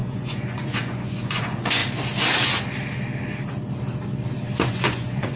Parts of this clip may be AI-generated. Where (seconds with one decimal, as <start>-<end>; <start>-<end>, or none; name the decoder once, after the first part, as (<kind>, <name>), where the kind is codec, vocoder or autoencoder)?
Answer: 0.0-1.8 (vocoder, Vocos); 4.7-5.4